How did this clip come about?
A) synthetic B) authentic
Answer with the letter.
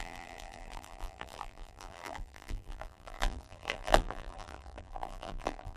A